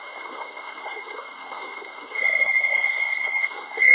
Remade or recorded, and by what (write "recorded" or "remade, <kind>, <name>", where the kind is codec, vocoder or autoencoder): remade, codec, SNAC